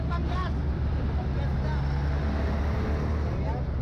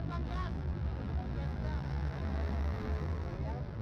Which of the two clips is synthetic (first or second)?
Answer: second